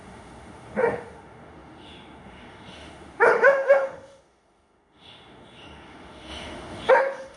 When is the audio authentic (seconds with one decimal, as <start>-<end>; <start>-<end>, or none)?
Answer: none